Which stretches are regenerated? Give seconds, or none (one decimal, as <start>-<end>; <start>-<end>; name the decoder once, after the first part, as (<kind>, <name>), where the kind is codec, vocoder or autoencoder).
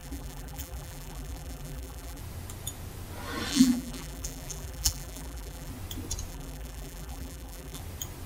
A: 0.0-2.2 (vocoder, BigVGAN v2); 3.5-5.7; 6.3-7.8